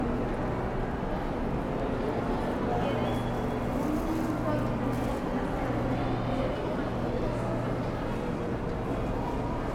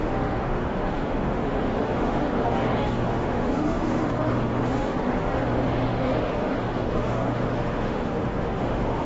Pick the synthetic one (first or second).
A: second